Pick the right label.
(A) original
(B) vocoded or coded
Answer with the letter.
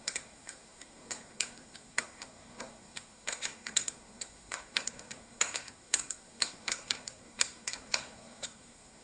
B